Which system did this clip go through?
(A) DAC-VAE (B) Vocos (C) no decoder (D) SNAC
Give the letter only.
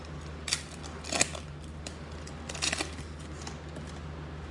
C